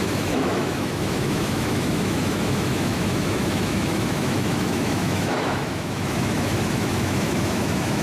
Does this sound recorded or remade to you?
remade